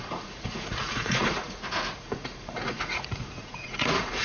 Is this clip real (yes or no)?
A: no